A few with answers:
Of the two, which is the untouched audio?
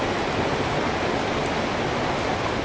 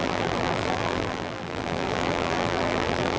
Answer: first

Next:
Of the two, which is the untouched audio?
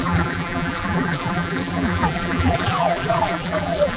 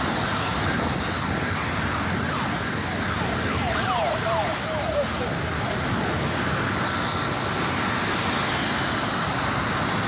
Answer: second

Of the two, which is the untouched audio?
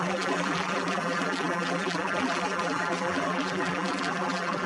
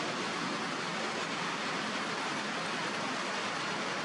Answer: second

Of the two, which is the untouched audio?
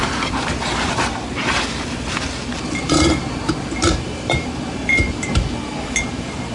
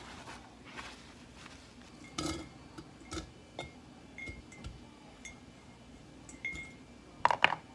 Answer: second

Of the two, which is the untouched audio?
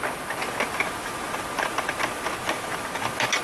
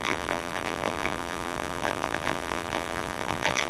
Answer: first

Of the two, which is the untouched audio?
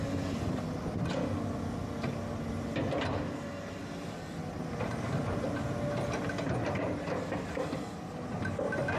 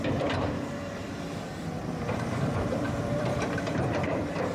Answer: first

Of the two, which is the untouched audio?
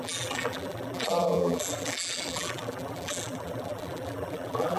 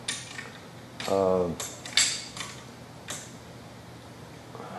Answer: second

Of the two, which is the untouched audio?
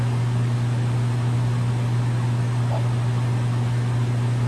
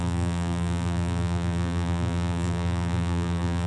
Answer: first